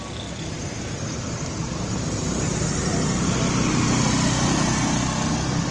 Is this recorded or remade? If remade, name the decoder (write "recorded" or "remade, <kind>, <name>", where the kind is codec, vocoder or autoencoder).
recorded